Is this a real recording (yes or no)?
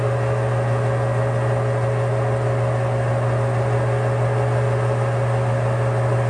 yes